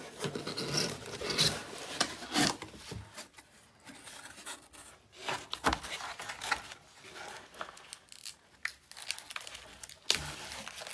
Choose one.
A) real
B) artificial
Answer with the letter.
A